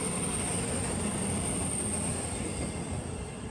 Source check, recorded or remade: recorded